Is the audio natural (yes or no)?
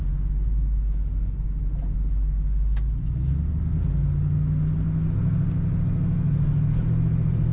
yes